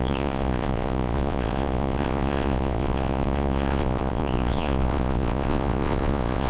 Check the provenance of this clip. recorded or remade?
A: remade